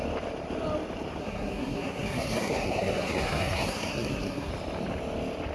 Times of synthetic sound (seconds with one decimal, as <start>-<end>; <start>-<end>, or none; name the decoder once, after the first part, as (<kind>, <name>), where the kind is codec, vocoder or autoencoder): 1.2-4.5 (codec, SNAC)

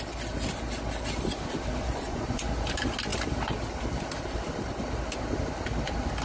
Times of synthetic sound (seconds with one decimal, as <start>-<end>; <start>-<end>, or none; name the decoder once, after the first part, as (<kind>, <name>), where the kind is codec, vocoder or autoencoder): 1.7-2.4 (vocoder, Vocos)

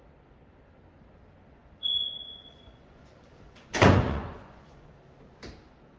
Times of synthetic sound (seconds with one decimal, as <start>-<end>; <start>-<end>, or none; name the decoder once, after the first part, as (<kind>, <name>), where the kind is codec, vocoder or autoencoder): 1.8-4.9 (vocoder, Vocos)

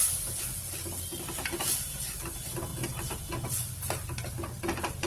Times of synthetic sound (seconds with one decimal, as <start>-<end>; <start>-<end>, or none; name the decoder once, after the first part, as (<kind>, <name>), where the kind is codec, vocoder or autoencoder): none